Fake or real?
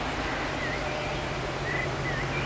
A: real